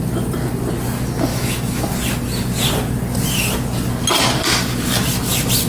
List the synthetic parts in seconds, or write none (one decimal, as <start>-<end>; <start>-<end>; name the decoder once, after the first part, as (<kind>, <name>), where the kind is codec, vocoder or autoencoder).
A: 1.3-1.8 (autoencoder, DAC-VAE)